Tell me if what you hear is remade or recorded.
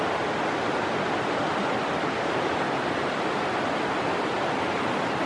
recorded